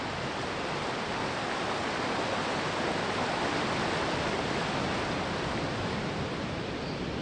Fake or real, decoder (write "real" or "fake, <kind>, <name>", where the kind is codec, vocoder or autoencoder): real